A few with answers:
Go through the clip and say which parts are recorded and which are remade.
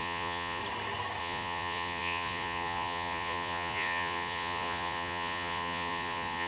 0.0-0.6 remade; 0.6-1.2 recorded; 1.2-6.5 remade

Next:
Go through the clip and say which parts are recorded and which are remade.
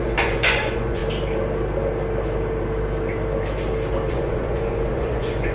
0.0-1.0 remade; 1.0-4.1 recorded; 4.1-5.5 remade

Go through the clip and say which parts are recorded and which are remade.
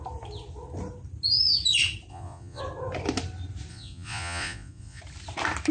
0.0-2.1 recorded; 2.1-2.6 remade; 2.6-3.7 recorded; 3.7-5.0 remade; 5.0-5.7 recorded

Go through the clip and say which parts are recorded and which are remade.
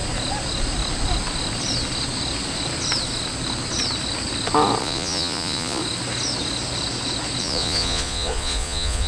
0.0-4.8 recorded; 4.8-5.8 remade; 5.8-7.4 recorded; 7.4-9.1 remade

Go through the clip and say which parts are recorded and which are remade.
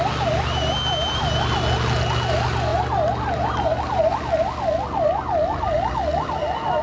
0.0-6.8 recorded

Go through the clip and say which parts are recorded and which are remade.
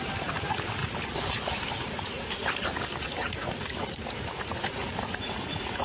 0.0-5.8 recorded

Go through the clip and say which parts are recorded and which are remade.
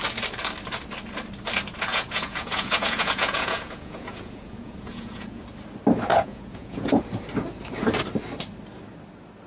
0.0-1.9 recorded; 1.9-5.4 remade; 5.4-6.1 recorded; 6.1-7.1 remade; 7.1-9.5 recorded